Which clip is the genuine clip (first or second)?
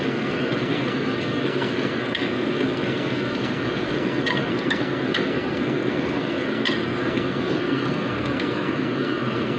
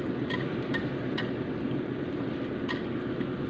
second